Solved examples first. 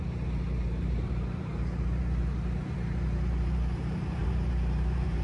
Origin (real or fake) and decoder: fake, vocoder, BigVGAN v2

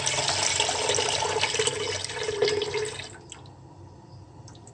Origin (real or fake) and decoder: real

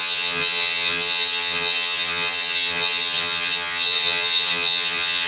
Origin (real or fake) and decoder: fake, vocoder, HiFi-GAN